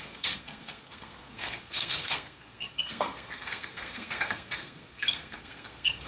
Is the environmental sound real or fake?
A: fake